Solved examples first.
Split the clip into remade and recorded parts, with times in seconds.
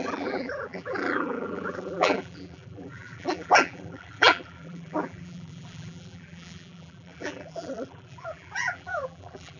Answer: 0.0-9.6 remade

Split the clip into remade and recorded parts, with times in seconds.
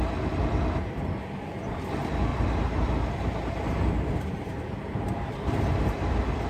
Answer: 0.0-2.3 recorded; 2.3-6.1 remade; 6.1-6.5 recorded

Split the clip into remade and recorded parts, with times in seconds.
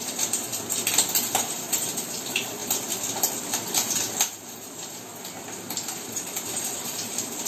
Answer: 0.0-0.5 remade; 0.5-1.3 recorded; 1.3-2.6 remade; 2.6-4.4 recorded; 4.4-5.1 remade; 5.1-5.9 recorded; 5.9-7.5 remade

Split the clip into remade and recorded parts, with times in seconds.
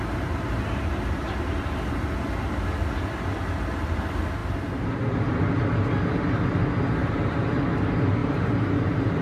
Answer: 0.0-7.0 recorded; 7.0-7.6 remade; 7.6-8.2 recorded; 8.2-9.2 remade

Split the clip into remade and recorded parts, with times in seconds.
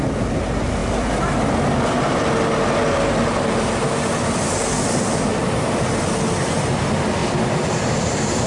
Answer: 0.0-5.3 recorded; 5.3-6.0 remade; 6.0-7.2 recorded; 7.2-7.8 remade; 7.8-8.5 recorded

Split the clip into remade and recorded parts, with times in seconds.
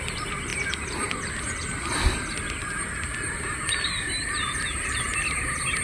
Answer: 0.0-5.8 recorded